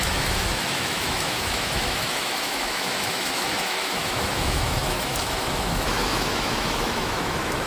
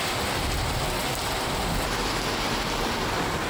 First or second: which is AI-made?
first